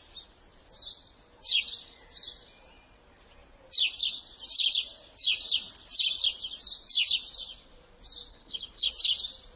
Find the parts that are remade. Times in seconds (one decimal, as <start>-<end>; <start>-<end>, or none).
8.3-8.9